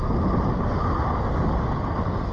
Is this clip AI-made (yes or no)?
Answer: no